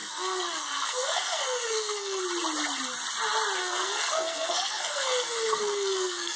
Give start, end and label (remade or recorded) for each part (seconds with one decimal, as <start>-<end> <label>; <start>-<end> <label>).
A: 0.0-2.2 remade; 2.2-3.6 recorded; 3.6-6.4 remade